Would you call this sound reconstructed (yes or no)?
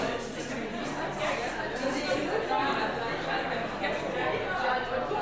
no